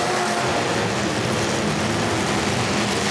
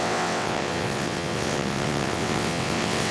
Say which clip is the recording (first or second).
first